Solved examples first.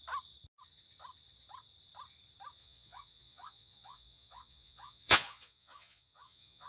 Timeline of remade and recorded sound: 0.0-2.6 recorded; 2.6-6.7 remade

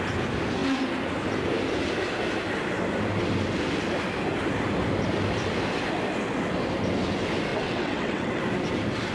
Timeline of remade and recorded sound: 0.0-7.5 recorded; 7.5-8.4 remade; 8.4-9.1 recorded

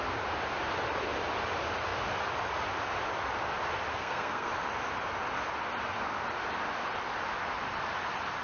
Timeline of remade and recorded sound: 0.0-3.9 recorded; 3.9-4.5 remade; 4.5-8.4 recorded

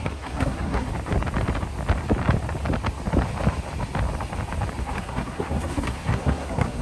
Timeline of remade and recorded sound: 0.0-0.9 remade; 0.9-4.8 recorded; 4.8-6.8 remade